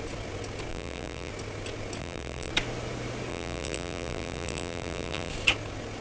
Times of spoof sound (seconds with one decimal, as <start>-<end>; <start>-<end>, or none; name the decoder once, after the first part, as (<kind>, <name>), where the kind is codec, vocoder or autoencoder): 0.7-1.3 (vocoder, BigVGAN v2); 2.0-2.5; 3.3-5.3